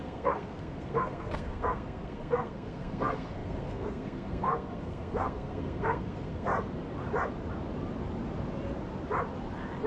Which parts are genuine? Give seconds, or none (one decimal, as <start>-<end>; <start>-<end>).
6.5-9.9